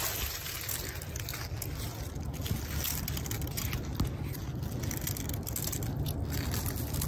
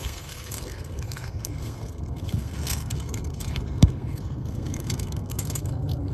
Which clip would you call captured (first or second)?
first